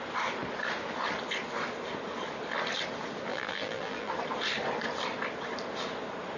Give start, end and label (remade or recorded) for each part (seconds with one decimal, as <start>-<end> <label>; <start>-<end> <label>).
0.0-3.3 recorded; 3.3-4.1 remade; 4.1-6.4 recorded